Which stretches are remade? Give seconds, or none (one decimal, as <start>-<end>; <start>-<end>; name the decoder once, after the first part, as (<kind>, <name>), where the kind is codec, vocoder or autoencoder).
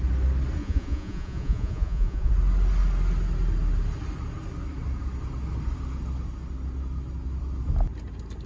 0.6-2.3 (vocoder, Vocos)